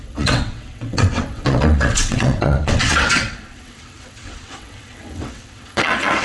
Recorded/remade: remade